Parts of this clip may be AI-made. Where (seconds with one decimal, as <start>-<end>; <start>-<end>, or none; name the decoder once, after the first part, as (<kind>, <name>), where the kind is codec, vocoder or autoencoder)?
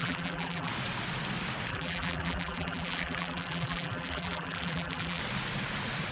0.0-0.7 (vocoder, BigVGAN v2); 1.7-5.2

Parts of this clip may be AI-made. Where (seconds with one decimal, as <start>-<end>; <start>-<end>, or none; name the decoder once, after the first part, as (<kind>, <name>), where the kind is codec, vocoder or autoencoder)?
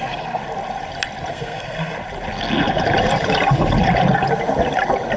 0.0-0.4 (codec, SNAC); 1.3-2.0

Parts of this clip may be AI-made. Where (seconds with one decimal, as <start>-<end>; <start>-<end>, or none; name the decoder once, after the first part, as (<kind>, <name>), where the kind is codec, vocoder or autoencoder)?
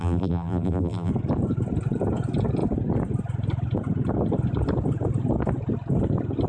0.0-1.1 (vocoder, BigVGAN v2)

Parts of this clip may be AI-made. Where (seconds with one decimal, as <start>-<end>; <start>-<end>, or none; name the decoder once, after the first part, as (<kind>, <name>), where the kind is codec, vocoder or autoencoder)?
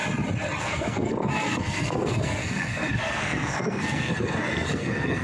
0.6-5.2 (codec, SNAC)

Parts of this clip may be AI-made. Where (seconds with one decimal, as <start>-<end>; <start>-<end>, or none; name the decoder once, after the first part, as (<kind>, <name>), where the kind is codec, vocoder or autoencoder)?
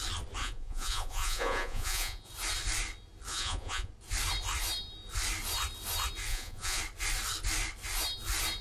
0.4-2.3 (vocoder, Vocos); 3.3-3.9; 6.3-6.8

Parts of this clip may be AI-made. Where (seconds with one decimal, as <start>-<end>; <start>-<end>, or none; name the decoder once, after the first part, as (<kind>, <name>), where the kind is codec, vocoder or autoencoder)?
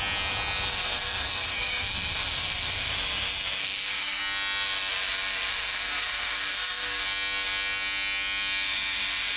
0.7-2.9 (codec, SNAC); 3.6-4.2; 5.5-7.0